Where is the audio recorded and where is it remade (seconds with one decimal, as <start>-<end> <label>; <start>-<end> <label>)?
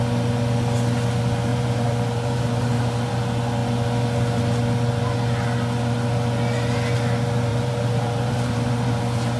0.0-1.5 recorded; 1.5-3.1 remade; 3.1-7.5 recorded; 7.5-8.9 remade; 8.9-9.4 recorded